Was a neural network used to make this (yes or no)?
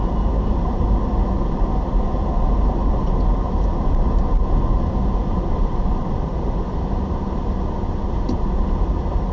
no